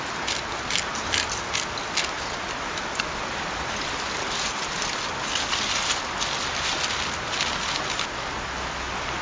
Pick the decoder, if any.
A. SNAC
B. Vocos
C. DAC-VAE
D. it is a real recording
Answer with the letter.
D